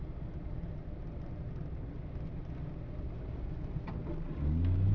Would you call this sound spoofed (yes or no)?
no